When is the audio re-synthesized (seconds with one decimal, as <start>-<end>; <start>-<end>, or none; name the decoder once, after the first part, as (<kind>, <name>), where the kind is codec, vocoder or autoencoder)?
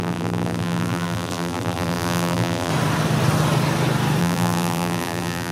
0.0-2.7 (vocoder, BigVGAN v2); 4.2-5.5